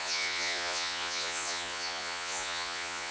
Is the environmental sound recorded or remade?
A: remade